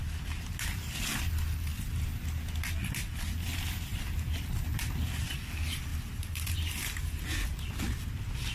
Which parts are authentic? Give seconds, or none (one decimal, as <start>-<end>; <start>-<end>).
0.0-3.9; 4.5-5.9; 7.3-8.5